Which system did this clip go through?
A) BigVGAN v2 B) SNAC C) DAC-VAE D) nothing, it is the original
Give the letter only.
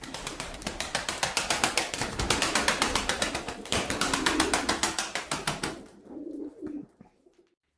A